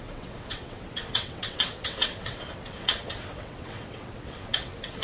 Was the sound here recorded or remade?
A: remade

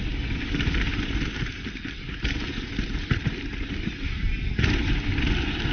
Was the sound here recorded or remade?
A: recorded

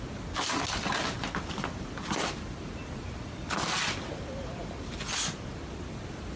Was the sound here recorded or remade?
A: recorded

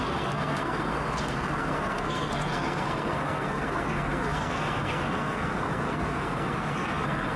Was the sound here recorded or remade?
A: remade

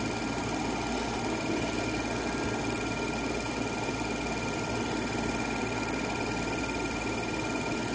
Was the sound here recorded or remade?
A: recorded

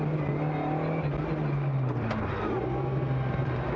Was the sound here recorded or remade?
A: recorded